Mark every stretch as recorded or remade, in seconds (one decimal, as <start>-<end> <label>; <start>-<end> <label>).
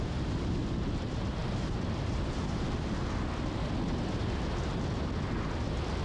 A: 0.0-6.0 recorded